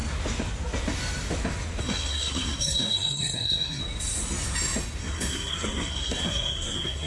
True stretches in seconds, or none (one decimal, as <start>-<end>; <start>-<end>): 0.0-1.8; 3.8-5.0